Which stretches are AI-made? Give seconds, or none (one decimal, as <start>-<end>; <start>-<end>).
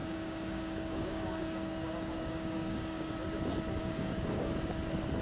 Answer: 0.0-3.1; 3.8-4.5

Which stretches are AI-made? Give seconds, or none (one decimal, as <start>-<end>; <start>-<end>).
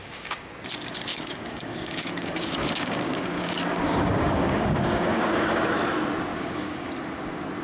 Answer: 0.0-0.5; 1.1-5.7; 6.3-6.9